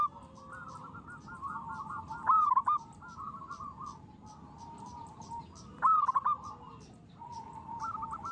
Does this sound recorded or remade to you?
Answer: recorded